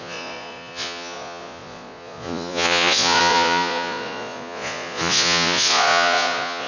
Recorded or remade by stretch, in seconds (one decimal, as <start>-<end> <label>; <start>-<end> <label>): 0.0-6.7 remade

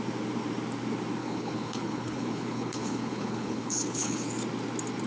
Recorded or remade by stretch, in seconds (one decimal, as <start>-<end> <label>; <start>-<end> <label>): 0.0-1.2 recorded; 1.2-4.3 remade; 4.3-5.1 recorded